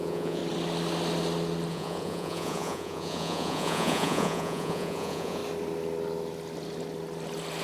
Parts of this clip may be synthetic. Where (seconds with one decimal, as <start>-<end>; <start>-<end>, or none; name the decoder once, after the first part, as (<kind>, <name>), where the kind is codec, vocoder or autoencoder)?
0.0-0.4 (vocoder, Vocos); 1.7-5.4